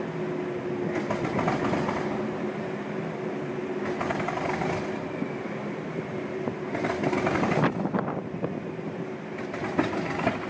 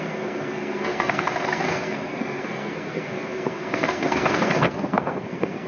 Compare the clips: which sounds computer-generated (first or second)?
second